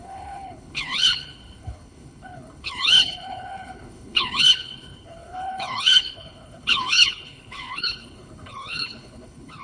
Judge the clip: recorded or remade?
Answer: remade